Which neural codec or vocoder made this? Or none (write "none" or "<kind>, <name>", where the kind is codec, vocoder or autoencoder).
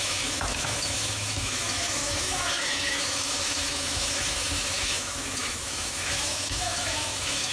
autoencoder, DAC-VAE